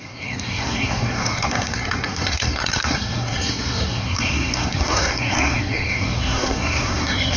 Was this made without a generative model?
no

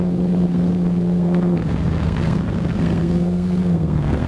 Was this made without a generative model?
no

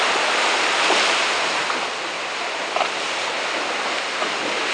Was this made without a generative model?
yes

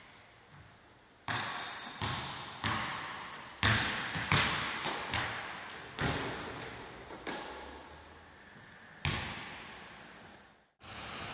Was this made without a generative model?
yes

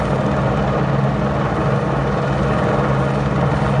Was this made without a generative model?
yes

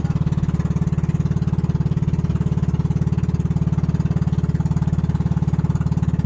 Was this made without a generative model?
yes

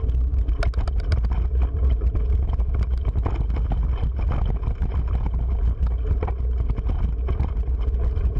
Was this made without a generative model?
yes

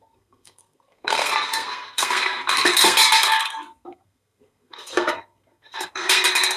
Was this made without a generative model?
no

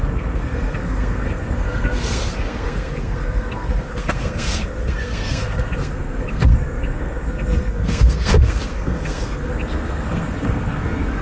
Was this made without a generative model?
no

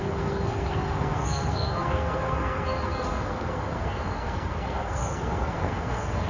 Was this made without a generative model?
no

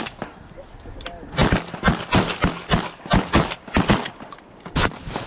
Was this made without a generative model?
yes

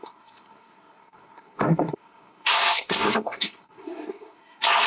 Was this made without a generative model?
no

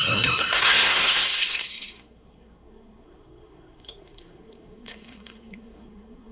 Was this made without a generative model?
no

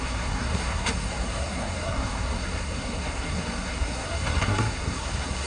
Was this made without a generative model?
no